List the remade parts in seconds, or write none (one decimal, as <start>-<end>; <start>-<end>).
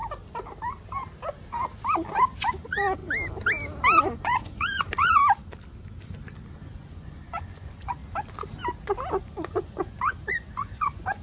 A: 2.5-3.0; 4.0-5.2; 6.5-8.0; 9.2-11.2